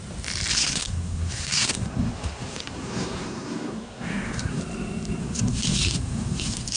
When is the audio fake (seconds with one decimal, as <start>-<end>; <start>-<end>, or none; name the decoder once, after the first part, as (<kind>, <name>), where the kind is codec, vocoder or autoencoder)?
0.5-4.6 (codec, SNAC); 5.2-6.8